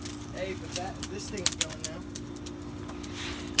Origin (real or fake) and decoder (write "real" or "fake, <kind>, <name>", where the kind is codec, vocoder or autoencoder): real